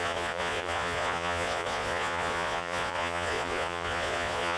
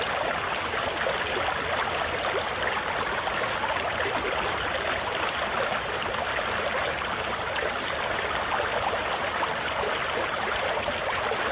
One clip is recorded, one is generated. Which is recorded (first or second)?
second